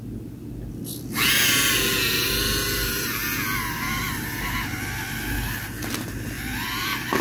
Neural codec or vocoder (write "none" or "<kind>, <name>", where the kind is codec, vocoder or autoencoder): none